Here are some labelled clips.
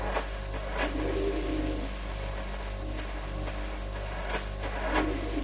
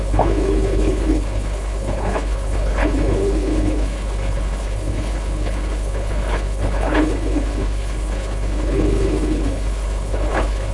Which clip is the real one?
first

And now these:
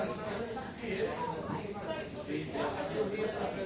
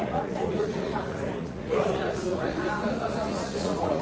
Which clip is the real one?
first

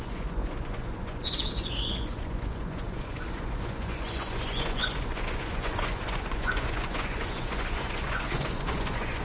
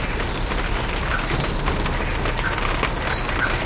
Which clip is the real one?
second